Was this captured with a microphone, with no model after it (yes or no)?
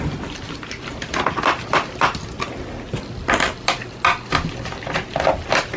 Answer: yes